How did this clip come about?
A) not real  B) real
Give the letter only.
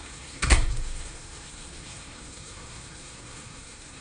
A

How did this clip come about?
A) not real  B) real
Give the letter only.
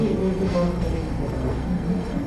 A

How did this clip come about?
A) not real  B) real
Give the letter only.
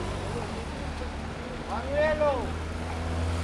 B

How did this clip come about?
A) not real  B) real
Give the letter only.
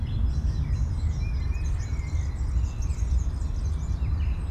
B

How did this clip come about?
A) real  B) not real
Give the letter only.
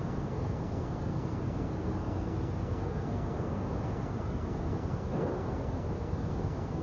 B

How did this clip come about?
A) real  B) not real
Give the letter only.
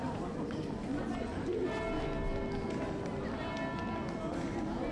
A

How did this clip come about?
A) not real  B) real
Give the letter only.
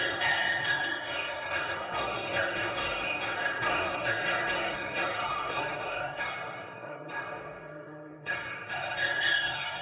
A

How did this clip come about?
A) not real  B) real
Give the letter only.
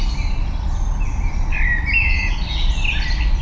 B